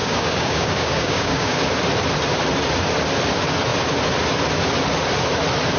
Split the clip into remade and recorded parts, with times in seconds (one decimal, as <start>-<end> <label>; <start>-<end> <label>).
0.0-1.6 remade; 1.6-5.8 recorded